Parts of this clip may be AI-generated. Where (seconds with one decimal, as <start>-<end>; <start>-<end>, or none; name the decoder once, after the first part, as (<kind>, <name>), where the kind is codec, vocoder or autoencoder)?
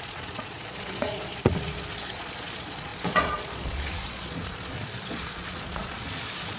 0.0-6.6 (vocoder, Vocos)